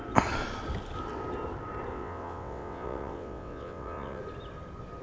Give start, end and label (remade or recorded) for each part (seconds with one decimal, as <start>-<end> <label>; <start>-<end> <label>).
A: 0.0-1.9 recorded; 1.9-4.2 remade; 4.2-5.0 recorded